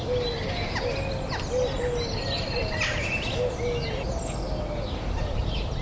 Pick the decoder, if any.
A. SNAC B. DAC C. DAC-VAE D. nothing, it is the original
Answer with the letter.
D